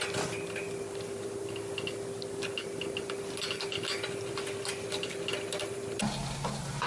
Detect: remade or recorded recorded